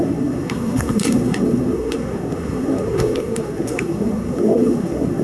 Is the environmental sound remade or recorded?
remade